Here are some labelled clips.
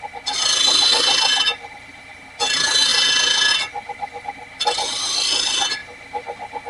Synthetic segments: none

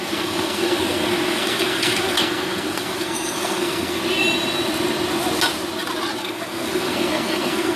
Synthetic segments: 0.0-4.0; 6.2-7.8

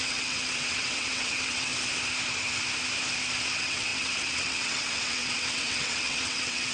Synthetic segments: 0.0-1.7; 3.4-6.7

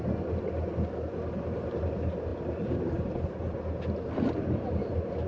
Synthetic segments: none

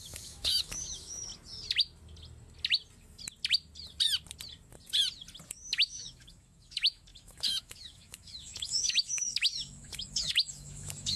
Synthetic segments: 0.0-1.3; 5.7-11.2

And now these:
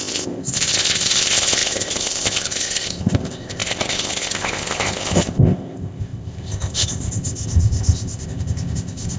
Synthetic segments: 0.0-9.2